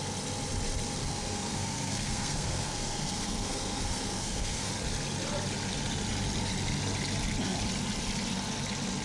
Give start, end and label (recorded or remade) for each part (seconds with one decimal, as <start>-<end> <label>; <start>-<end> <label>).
0.0-1.0 recorded; 1.0-4.7 remade; 4.7-9.0 recorded

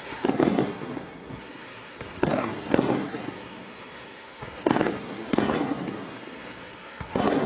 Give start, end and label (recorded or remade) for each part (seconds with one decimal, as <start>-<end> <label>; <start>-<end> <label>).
0.0-7.5 remade

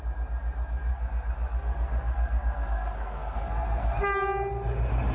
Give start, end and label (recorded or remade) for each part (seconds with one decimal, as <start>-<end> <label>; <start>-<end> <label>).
0.0-0.9 recorded; 0.9-4.0 remade; 4.0-5.1 recorded

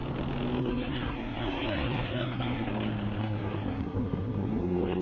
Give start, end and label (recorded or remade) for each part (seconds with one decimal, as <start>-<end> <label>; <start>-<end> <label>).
0.0-0.6 recorded; 0.6-2.7 remade; 2.7-3.2 recorded; 3.2-5.0 remade

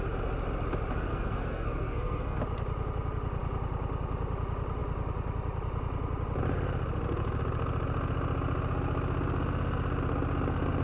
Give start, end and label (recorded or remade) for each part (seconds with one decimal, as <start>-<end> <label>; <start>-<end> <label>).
0.0-1.1 recorded; 1.1-2.4 remade; 2.4-10.8 recorded